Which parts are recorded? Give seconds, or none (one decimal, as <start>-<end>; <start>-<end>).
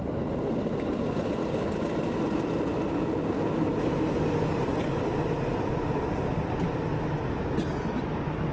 0.0-8.5